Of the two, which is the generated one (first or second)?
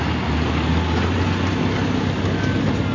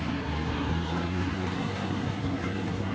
second